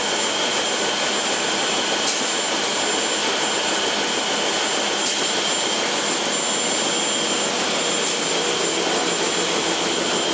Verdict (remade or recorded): recorded